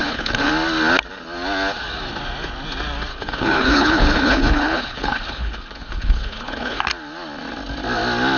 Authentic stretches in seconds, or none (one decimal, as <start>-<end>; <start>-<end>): 0.5-3.1; 6.8-8.4